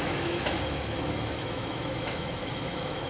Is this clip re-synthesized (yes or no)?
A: yes